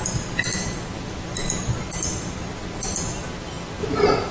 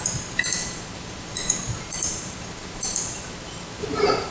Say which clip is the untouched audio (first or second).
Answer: first